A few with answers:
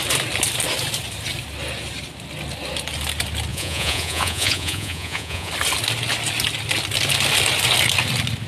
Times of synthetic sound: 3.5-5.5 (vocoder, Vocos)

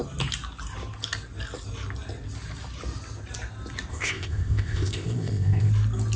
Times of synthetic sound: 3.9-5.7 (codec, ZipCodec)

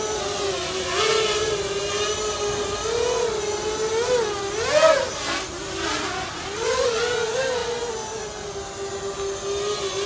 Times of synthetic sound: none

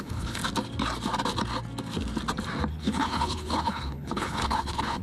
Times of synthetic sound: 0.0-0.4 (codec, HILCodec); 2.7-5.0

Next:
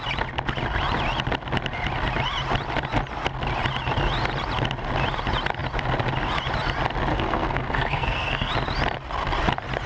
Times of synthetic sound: 7.1-8.5 (codec, SNAC)

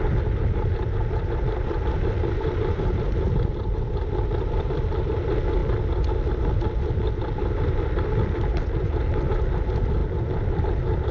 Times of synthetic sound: 0.0-5.6 (vocoder, BigVGAN v2); 6.3-11.1

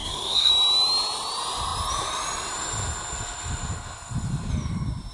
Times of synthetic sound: 0.0-0.5 (codec, SNAC)

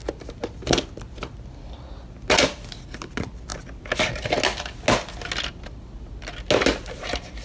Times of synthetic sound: none